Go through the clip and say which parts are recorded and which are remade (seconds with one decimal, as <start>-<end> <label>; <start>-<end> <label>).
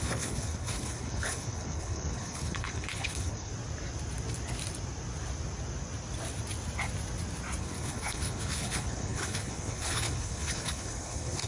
0.0-3.5 remade; 3.5-7.6 recorded; 7.6-11.5 remade